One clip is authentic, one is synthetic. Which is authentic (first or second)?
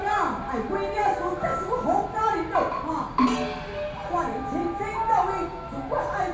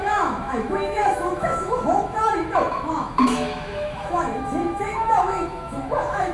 first